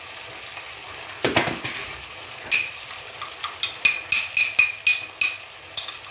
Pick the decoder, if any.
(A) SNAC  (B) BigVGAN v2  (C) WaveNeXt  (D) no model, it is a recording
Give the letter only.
D